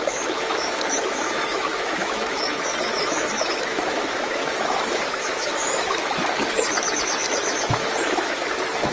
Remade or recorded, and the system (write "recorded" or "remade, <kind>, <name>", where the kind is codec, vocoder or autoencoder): remade, autoencoder, DAC-VAE